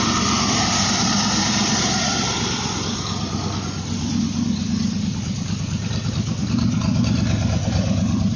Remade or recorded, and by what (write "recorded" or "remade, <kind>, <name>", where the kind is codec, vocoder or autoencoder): remade, vocoder, BigVGAN v2